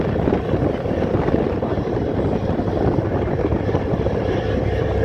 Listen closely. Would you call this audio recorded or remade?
remade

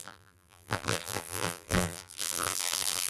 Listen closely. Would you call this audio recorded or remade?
remade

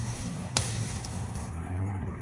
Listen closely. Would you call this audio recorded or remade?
remade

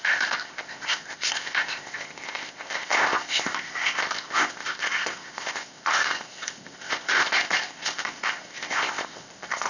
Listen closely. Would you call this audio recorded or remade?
remade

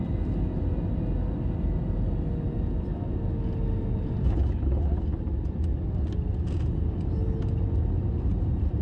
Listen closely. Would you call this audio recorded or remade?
recorded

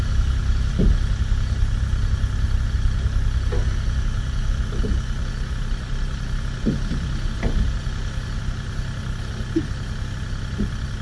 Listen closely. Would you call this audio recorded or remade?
recorded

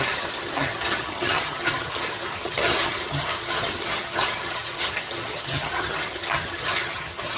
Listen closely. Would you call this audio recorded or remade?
remade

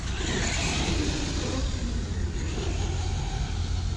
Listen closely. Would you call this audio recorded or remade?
recorded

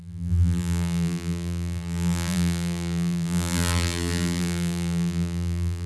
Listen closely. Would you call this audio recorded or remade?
remade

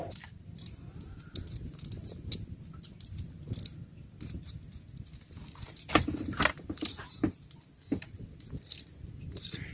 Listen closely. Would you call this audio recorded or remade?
recorded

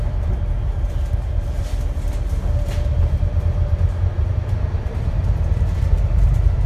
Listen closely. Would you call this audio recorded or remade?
remade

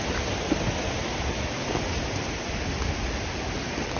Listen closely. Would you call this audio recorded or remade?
recorded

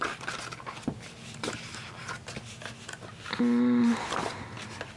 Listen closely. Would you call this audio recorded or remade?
recorded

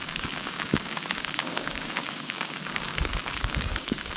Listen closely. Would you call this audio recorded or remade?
remade